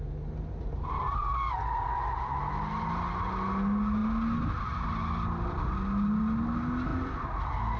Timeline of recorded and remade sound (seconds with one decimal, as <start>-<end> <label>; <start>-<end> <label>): 0.0-7.8 recorded